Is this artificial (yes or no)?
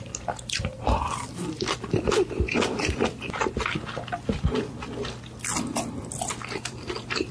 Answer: yes